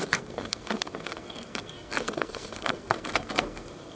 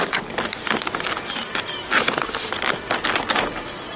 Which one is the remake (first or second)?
first